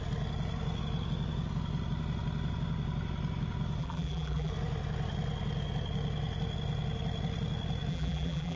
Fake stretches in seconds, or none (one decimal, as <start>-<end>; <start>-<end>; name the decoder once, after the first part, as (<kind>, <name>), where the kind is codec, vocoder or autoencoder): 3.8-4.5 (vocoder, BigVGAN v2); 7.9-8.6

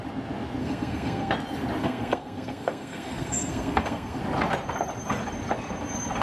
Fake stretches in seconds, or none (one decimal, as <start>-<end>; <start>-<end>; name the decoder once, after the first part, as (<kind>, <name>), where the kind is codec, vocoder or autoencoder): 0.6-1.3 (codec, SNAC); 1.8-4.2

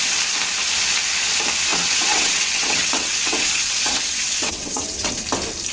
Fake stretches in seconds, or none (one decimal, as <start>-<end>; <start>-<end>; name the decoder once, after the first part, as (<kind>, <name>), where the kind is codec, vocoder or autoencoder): 1.7-5.1 (vocoder, WaveNeXt)

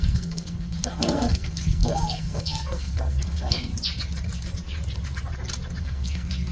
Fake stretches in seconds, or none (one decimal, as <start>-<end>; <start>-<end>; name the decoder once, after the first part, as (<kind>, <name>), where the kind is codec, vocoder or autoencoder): 0.0-3.7 (codec, SNAC); 5.8-6.5

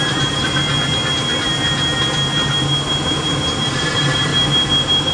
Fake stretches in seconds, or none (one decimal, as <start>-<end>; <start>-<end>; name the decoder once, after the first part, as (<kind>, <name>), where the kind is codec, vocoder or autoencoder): 0.0-0.6 (vocoder, BigVGAN v2); 3.7-4.3